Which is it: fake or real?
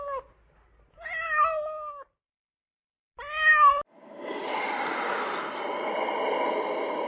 real